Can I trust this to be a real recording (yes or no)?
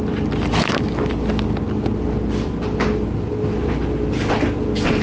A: yes